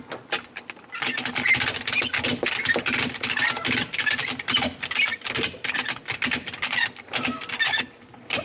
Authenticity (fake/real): real